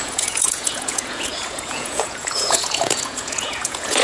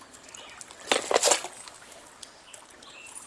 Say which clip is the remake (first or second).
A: first